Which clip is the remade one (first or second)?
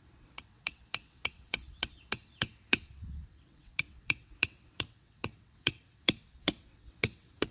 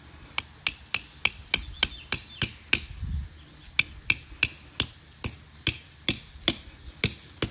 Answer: first